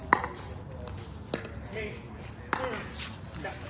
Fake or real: real